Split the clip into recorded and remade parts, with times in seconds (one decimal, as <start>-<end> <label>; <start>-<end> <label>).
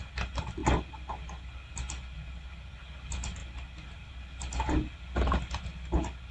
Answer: 0.0-6.3 recorded